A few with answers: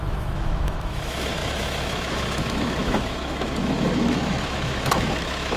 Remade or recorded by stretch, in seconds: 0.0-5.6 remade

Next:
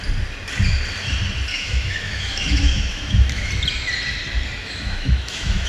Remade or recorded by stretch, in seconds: 0.0-1.5 recorded; 1.5-3.5 remade; 3.5-4.6 recorded; 4.6-5.7 remade

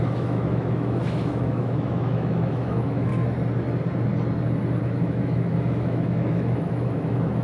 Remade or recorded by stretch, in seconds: 0.0-3.1 remade; 3.1-4.8 recorded; 4.8-7.4 remade

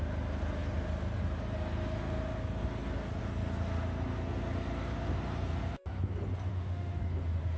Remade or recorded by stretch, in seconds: 0.0-6.5 recorded; 6.5-7.0 remade; 7.0-7.6 recorded

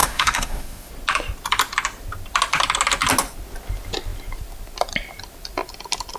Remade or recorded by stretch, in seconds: 0.0-0.9 remade; 0.9-6.2 recorded

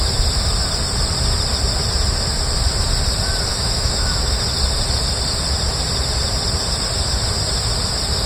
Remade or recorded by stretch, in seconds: 0.0-3.5 recorded; 3.5-4.4 remade; 4.4-8.3 recorded

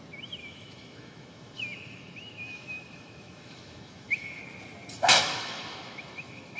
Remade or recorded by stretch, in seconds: 0.0-0.4 recorded; 0.4-4.4 remade; 4.4-5.1 recorded; 5.1-6.6 remade

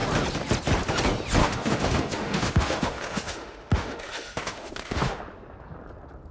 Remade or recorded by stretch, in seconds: 0.0-1.4 recorded; 1.4-5.2 remade; 5.2-6.3 recorded